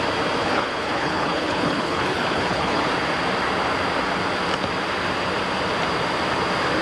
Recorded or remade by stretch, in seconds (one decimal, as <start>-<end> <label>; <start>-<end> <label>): 0.0-0.4 recorded; 0.4-2.9 remade; 2.9-6.8 recorded